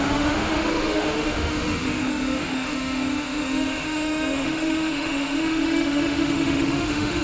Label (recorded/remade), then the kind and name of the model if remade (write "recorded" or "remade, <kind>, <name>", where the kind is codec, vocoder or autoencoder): remade, autoencoder, DAC-VAE